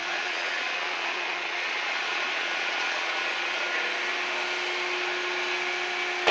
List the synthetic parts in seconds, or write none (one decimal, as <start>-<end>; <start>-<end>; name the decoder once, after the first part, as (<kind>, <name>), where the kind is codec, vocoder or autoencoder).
0.0-3.8 (vocoder, Vocos)